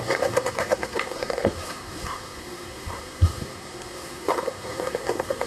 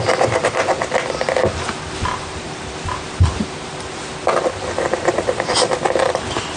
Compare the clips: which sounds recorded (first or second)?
second